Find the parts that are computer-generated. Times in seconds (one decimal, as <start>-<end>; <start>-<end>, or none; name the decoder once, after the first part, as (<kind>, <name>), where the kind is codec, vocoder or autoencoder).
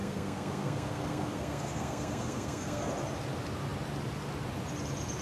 0.0-2.9 (codec, SNAC)